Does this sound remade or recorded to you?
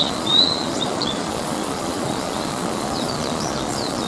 remade